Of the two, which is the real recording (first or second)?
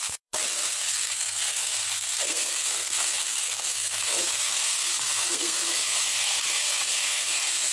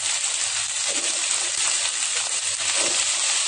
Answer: second